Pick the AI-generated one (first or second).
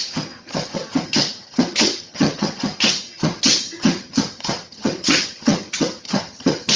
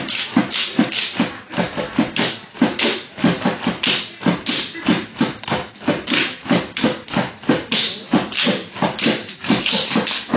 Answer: first